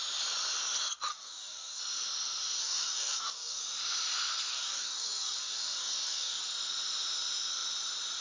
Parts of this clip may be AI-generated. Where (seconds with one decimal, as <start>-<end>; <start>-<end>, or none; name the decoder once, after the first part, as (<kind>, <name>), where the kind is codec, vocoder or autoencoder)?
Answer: 1.1-1.8 (codec, DAC); 2.6-3.6; 4.5-6.4